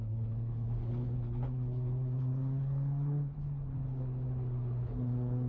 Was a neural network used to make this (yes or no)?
yes